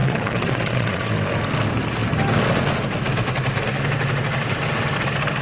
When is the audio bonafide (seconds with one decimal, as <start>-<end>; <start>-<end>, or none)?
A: 1.1-5.4